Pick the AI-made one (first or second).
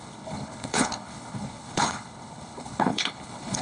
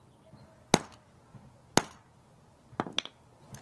first